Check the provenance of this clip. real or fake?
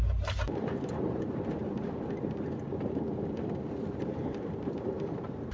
fake